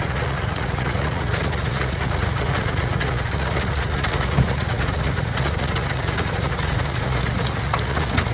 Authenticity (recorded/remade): remade